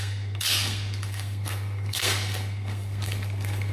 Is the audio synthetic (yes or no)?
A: yes